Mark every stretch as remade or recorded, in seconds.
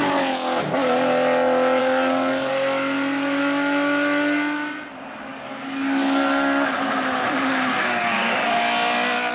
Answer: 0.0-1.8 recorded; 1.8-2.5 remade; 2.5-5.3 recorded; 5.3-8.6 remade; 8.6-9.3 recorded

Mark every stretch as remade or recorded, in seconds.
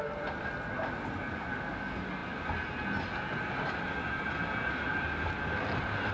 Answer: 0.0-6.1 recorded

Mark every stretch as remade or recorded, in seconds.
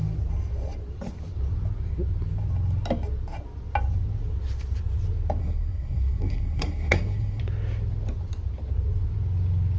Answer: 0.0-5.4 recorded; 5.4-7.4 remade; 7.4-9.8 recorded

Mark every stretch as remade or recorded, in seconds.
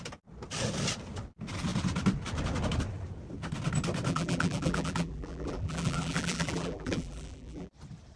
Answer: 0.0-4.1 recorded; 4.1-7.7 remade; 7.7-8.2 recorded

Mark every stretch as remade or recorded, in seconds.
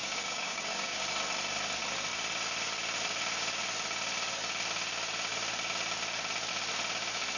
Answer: 0.0-1.0 remade; 1.0-7.4 recorded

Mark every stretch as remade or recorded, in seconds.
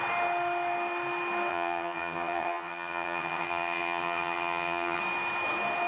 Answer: 0.0-1.5 recorded; 1.5-5.0 remade; 5.0-5.9 recorded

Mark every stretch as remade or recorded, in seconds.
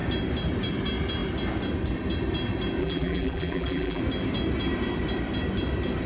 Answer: 0.0-2.8 recorded; 2.8-4.0 remade; 4.0-6.1 recorded